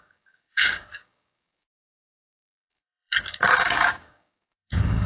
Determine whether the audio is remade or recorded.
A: remade